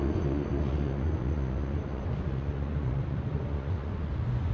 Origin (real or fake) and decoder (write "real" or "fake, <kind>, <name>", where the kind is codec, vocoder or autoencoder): fake, vocoder, Vocos